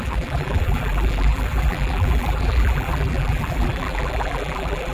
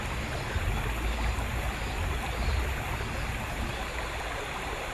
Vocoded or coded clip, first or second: first